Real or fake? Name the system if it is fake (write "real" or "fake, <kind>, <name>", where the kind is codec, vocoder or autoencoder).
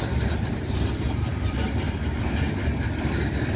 real